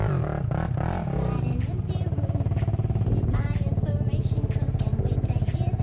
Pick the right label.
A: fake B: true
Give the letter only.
B